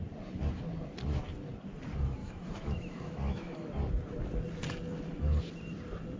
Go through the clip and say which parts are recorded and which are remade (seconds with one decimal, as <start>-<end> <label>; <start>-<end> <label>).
0.0-2.2 recorded; 2.2-3.7 remade; 3.7-6.2 recorded